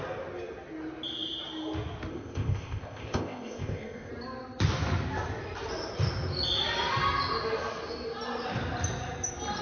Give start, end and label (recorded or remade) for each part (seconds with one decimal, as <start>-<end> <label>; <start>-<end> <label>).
0.0-2.1 recorded; 2.1-4.1 remade; 4.1-9.6 recorded